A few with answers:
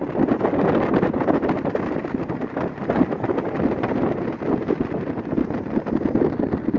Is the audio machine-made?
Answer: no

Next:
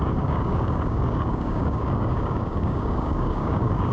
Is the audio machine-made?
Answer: yes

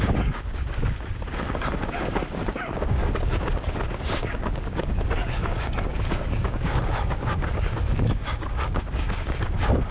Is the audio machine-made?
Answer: yes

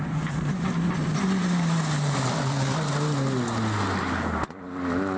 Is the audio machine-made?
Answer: no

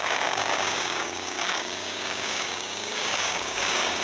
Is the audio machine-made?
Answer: yes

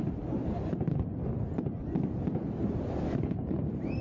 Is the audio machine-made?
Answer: no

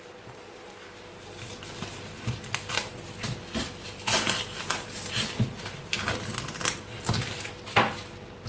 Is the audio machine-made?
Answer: no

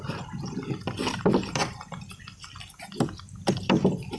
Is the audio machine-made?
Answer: no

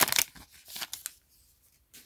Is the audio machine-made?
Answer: no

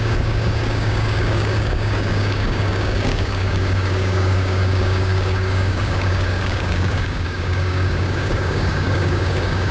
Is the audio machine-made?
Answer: yes